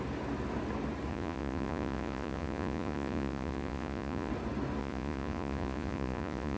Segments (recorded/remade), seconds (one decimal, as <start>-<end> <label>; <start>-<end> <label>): 0.0-1.1 recorded; 1.1-4.3 remade; 4.3-4.8 recorded; 4.8-6.6 remade